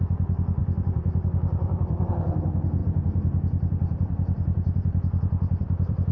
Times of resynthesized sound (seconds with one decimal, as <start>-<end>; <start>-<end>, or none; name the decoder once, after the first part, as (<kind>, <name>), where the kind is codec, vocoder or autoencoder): 0.6-2.1 (vocoder, BigVGAN v2); 2.8-6.1